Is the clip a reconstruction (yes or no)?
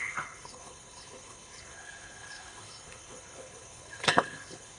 yes